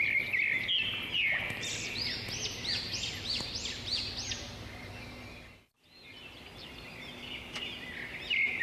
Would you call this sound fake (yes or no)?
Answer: no